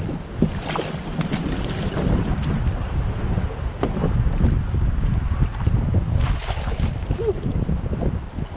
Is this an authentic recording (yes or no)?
yes